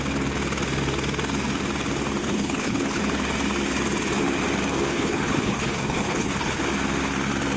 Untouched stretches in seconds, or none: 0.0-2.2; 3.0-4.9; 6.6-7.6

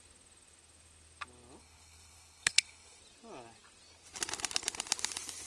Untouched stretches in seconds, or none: 0.0-1.6; 3.0-5.5

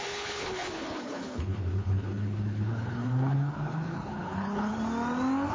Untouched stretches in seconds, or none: 4.8-5.5

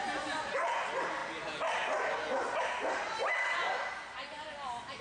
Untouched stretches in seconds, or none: 0.0-5.0

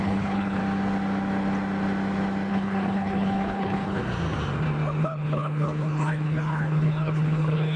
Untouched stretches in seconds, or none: 0.6-2.5; 4.0-5.0